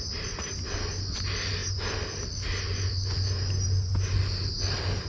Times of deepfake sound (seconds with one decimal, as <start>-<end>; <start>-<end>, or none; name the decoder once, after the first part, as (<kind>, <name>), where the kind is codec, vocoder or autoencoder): none